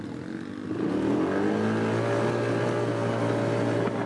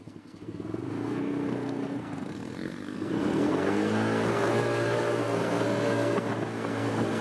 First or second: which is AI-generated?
second